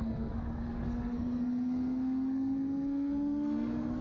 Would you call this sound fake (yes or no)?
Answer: yes